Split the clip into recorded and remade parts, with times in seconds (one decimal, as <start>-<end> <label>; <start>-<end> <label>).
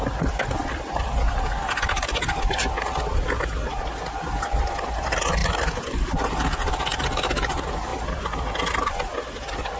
0.0-9.8 recorded